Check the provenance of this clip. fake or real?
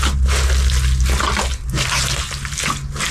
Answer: real